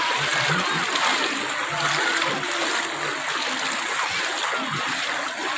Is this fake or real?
real